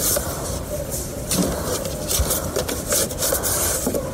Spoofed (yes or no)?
yes